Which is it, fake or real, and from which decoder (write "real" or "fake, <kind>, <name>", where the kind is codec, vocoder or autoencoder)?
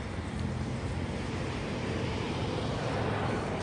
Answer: fake, vocoder, BigVGAN v2